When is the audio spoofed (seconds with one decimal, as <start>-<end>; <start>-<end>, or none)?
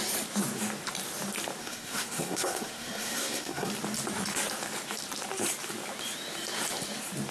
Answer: 1.6-3.7